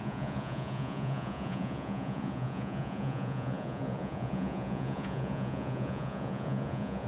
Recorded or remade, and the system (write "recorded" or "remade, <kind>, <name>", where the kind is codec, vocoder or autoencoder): remade, vocoder, Vocos